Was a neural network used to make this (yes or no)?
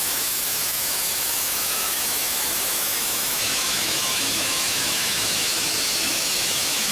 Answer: yes